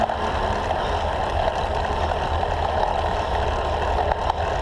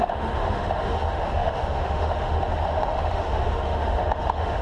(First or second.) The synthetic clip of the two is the second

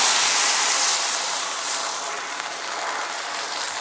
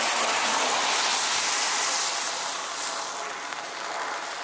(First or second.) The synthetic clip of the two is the first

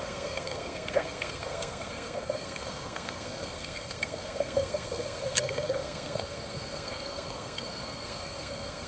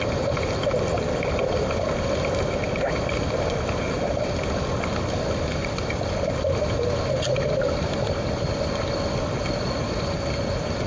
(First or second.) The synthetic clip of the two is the first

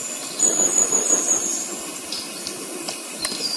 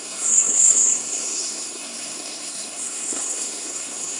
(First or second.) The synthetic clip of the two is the second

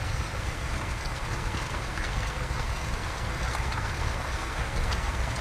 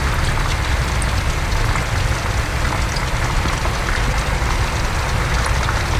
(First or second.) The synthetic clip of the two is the first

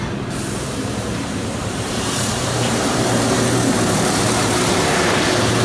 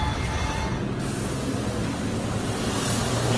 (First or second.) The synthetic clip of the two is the first